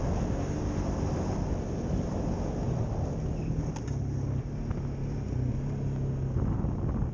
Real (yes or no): yes